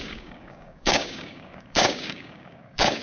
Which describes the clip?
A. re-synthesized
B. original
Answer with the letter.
A